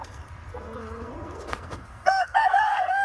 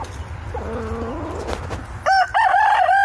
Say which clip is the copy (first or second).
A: first